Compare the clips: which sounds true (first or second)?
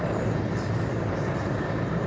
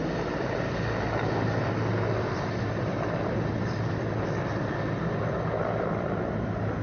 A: second